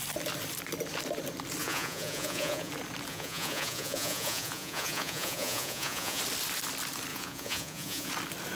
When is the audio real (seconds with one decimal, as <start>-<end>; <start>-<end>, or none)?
0.0-1.6; 2.7-3.1; 6.2-7.1; 8.1-8.5